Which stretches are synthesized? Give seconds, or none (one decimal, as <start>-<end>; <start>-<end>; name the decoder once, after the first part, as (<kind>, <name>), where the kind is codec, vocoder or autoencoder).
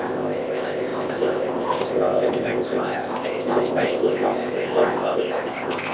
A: 0.0-5.9 (codec, ZipCodec)